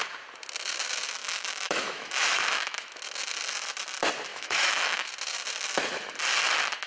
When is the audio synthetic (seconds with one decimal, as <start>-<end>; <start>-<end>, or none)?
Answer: 1.2-3.0; 4.3-5.1